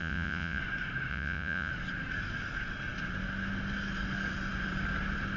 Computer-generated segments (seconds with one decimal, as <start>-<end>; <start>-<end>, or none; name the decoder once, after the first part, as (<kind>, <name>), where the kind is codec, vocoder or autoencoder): 0.0-0.6 (vocoder, Vocos); 1.1-1.7